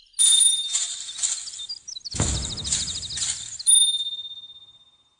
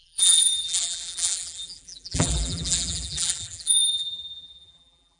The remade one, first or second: second